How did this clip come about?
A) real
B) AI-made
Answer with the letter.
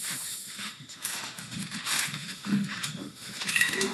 B